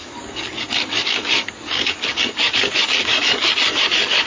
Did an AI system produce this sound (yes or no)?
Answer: yes